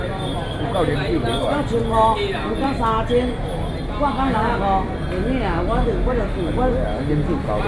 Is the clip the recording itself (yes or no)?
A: yes